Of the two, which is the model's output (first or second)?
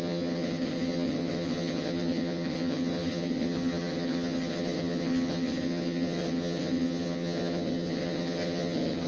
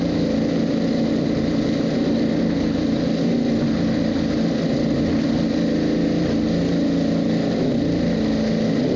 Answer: first